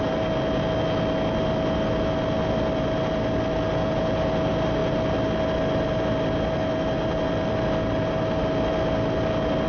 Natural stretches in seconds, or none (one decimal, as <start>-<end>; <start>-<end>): 0.0-9.7